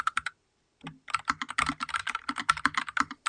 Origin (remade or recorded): recorded